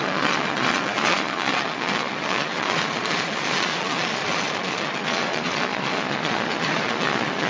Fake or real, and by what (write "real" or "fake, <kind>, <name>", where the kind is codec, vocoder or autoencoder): fake, vocoder, Vocos